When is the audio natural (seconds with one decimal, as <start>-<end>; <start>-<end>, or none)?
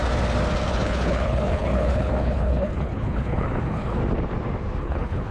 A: 0.0-0.7; 4.0-4.8